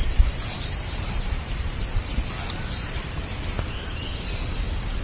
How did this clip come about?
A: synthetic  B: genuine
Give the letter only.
A